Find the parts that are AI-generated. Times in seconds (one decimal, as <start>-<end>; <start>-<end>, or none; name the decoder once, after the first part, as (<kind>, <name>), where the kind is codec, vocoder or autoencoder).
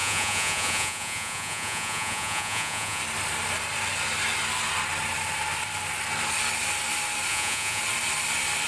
0.0-3.0 (vocoder, Vocos); 7.3-7.8